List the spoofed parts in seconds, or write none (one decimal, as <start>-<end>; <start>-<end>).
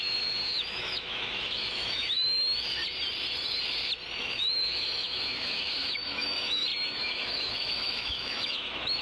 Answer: 0.0-2.8; 4.2-9.0